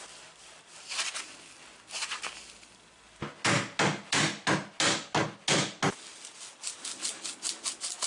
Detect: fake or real real